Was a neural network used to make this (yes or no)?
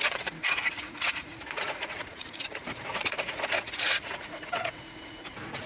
yes